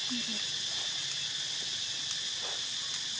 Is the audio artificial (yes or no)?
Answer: no